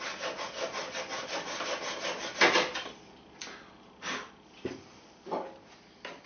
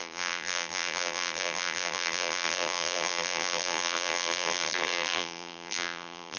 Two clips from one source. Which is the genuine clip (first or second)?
first